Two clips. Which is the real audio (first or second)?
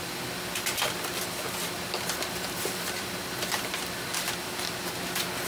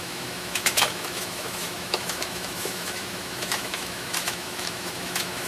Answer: first